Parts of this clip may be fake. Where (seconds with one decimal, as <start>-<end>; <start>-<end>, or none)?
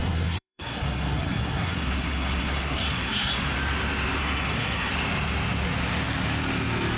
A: 0.0-3.3; 4.2-4.9